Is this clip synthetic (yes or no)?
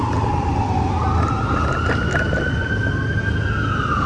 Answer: no